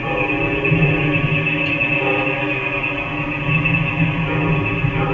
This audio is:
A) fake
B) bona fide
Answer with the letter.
B